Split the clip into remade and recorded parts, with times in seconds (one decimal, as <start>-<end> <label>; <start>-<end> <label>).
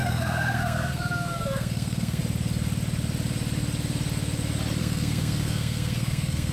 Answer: 0.0-2.2 remade; 2.2-4.8 recorded; 4.8-6.5 remade